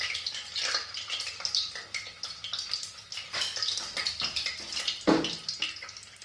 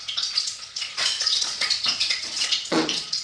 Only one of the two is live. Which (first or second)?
first